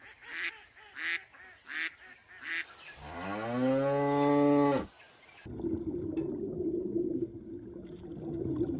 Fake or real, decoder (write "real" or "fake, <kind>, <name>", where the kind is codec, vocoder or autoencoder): real